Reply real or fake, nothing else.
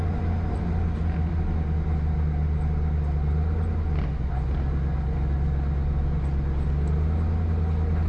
real